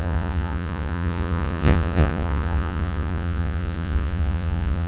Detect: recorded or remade remade